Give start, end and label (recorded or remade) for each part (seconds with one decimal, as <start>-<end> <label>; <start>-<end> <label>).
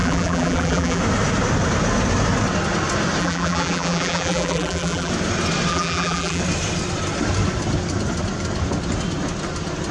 0.0-1.0 remade; 1.0-3.2 recorded; 3.2-5.1 remade; 5.1-5.7 recorded; 5.7-6.4 remade; 6.4-9.9 recorded